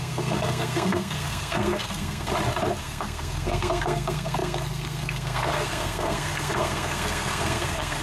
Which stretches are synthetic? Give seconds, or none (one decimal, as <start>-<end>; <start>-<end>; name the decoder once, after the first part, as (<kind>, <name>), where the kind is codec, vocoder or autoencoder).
0.0-2.3 (codec, SNAC); 2.8-8.0